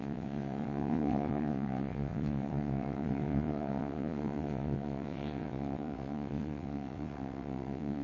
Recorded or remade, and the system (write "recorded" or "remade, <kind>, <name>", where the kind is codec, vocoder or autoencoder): remade, vocoder, WaveNeXt